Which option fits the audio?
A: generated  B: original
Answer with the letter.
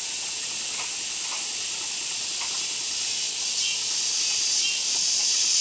B